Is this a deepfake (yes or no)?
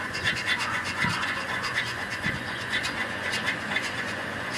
yes